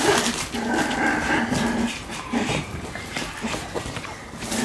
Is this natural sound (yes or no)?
no